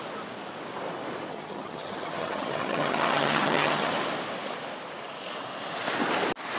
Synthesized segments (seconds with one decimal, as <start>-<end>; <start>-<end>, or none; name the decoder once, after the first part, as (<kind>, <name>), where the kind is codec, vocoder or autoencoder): 1.3-3.9 (vocoder, HiFi-GAN)